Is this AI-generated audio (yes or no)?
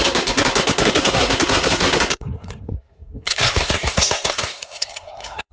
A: yes